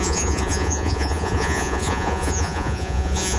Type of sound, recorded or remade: remade